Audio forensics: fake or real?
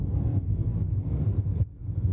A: fake